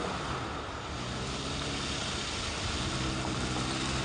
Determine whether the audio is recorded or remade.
recorded